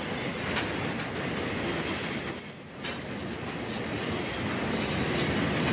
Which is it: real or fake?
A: real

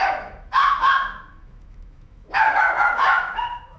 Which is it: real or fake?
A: fake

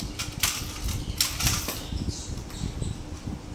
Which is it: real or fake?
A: real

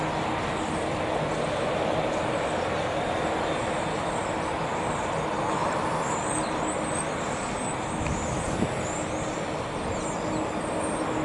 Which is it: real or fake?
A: real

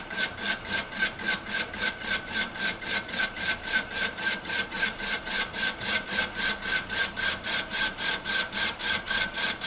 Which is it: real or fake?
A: fake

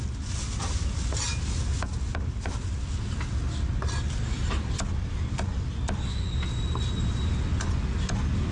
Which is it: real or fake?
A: real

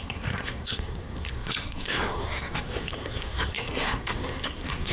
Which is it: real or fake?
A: fake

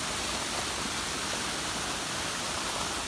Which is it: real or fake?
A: real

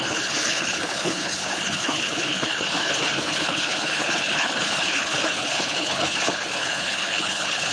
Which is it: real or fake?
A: fake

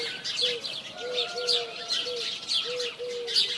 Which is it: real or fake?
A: real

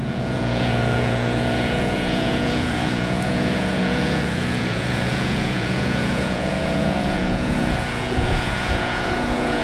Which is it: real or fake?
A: fake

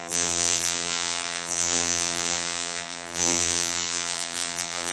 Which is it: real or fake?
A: fake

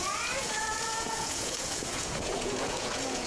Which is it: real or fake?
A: fake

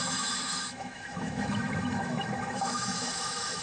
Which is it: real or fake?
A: fake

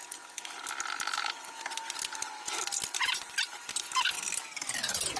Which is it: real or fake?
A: real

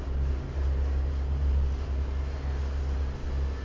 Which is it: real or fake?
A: real